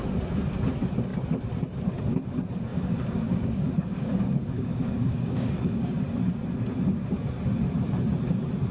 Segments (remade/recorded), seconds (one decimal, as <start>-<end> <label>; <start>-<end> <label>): 0.0-2.7 recorded; 2.7-5.9 remade; 5.9-8.7 recorded